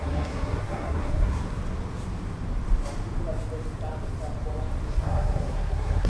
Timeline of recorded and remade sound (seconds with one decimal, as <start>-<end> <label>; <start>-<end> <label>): 0.0-1.6 remade; 1.6-4.9 recorded; 4.9-6.1 remade